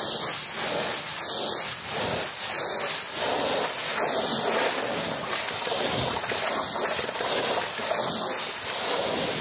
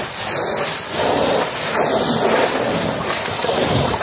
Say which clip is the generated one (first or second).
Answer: second